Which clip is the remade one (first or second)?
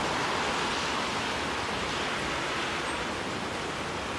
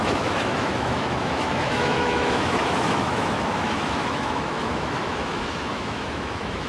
second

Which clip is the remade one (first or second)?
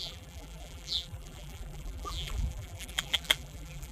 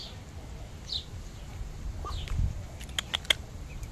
first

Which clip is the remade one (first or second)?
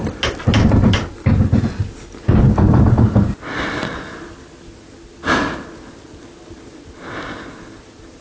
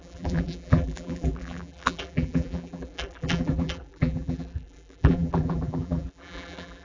second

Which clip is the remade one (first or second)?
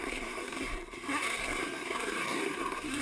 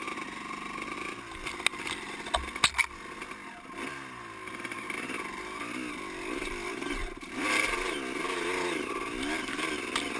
first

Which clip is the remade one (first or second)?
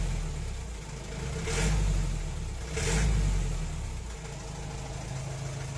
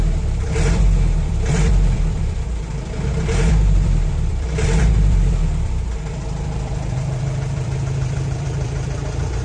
second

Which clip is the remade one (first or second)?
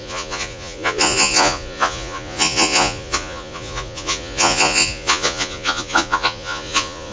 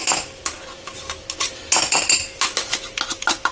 first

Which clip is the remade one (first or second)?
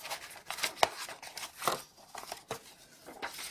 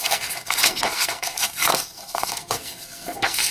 second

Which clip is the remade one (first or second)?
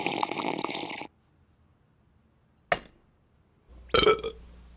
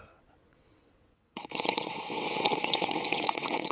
second